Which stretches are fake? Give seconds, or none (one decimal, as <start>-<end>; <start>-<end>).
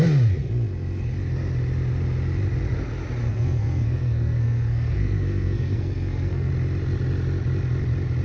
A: 3.2-6.5